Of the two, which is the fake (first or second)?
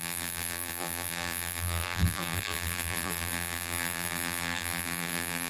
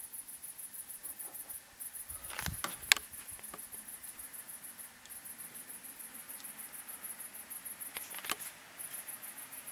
first